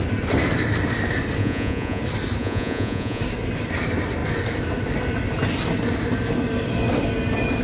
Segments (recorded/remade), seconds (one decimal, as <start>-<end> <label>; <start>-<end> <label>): 0.0-1.4 recorded; 1.4-2.0 remade; 2.0-2.4 recorded; 2.4-3.2 remade; 3.2-7.6 recorded